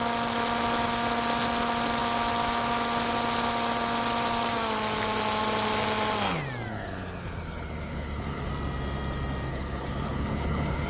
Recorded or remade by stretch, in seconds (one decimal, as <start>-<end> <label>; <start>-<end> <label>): 0.0-6.7 recorded; 6.7-8.5 remade; 8.5-9.5 recorded; 9.5-10.9 remade